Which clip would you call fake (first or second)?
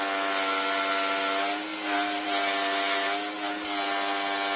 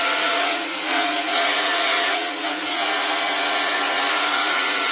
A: second